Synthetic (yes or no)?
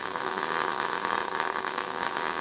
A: yes